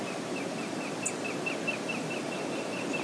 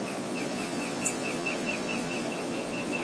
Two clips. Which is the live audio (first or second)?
first